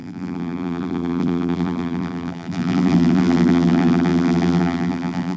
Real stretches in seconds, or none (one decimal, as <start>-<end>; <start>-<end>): none